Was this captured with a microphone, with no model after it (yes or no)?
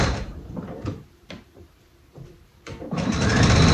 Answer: no